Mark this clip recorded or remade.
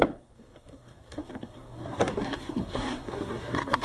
remade